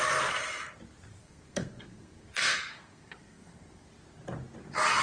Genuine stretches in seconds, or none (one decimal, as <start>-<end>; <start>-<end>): 0.0-1.2; 3.9-5.0